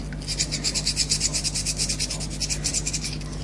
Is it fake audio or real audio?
real